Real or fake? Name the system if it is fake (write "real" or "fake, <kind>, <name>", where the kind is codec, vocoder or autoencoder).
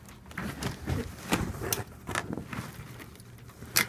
real